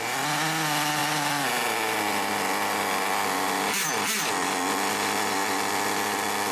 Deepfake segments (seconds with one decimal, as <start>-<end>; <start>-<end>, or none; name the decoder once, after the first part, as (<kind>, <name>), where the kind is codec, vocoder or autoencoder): none